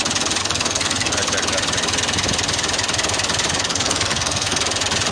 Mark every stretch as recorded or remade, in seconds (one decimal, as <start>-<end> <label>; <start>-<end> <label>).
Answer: 0.0-0.4 recorded; 0.4-1.1 remade; 1.1-3.7 recorded; 3.7-4.6 remade; 4.6-5.1 recorded